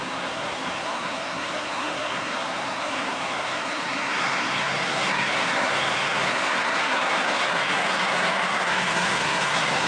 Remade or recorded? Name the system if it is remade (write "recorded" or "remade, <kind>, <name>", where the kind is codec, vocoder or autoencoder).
remade, codec, SNAC